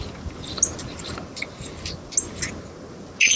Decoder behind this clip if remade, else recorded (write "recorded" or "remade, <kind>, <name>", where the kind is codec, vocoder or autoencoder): recorded